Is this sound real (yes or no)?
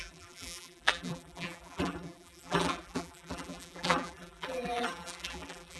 no